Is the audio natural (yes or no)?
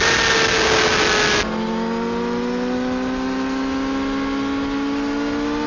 yes